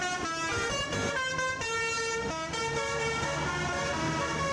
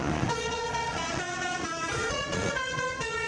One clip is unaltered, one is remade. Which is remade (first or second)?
second